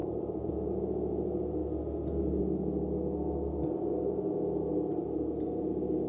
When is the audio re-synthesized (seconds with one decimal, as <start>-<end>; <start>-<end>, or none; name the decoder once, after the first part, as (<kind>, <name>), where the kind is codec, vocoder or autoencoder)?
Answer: 0.0-0.5 (vocoder, BigVGAN v2)